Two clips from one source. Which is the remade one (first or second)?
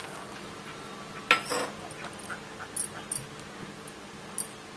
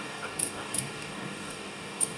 second